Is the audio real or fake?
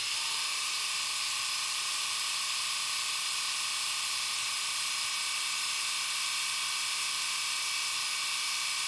real